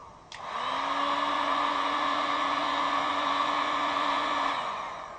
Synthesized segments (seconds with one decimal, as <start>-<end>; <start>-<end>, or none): 1.3-5.2